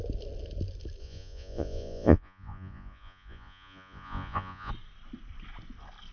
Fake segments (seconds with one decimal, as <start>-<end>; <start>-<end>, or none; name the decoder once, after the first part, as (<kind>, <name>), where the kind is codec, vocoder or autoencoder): 1.0-4.7 (vocoder, Vocos)

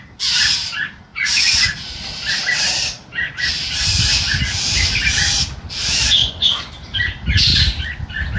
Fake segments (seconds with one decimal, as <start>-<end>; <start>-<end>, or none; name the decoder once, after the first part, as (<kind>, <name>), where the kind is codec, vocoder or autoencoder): 6.2-6.7 (vocoder, Vocos)

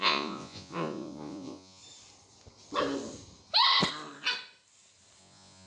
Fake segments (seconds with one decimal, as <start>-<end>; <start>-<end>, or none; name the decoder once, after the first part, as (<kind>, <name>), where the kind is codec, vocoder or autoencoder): 0.0-1.8 (vocoder, Vocos); 5.2-5.7

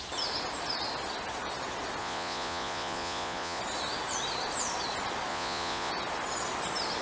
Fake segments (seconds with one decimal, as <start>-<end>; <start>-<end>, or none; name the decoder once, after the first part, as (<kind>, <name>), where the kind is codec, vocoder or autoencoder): 2.0-3.6 (vocoder, Vocos); 5.3-5.9

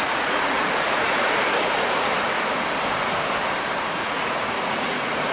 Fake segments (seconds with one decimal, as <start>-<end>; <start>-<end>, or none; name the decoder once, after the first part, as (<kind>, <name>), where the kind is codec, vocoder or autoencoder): 0.0-2.1 (vocoder, Vocos); 3.8-5.3